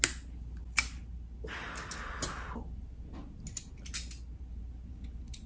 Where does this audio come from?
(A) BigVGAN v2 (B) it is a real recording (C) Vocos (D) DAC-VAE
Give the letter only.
B